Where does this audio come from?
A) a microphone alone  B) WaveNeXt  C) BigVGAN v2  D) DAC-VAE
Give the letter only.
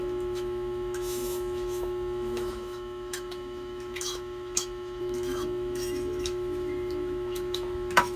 D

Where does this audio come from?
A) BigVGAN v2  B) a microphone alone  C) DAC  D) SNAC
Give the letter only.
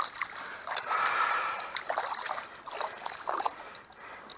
B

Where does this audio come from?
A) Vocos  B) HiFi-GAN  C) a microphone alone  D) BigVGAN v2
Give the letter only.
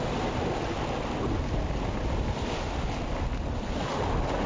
C